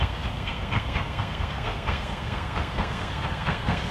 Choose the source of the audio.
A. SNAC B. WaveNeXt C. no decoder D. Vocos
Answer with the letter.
A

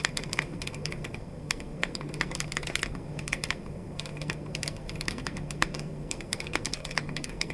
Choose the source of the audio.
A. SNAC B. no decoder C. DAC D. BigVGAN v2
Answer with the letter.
A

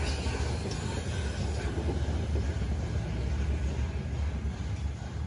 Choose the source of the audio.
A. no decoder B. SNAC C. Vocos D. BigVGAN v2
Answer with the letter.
A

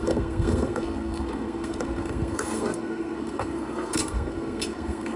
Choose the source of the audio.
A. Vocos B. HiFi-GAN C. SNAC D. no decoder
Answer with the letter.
C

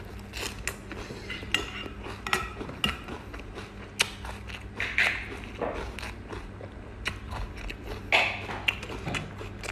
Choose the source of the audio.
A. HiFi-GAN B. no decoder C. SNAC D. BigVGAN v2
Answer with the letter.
B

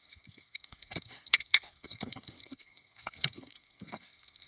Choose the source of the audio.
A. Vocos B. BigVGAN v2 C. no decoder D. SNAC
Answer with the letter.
D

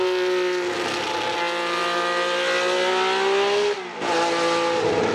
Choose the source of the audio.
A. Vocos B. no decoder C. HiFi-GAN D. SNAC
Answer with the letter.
B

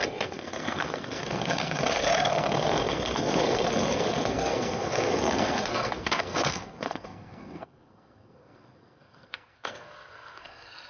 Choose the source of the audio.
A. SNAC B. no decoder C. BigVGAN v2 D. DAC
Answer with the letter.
A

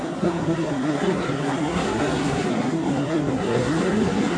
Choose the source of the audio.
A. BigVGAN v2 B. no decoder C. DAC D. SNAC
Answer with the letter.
D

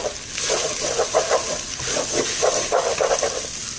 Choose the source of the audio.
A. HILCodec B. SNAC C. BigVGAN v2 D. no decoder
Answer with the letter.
D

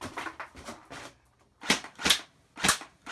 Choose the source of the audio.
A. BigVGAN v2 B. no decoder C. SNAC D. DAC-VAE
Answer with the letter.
B